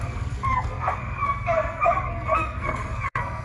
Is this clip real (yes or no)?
no